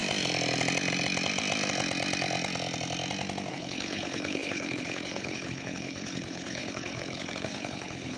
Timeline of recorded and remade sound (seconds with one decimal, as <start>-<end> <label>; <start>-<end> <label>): 0.0-3.5 recorded; 3.5-8.2 remade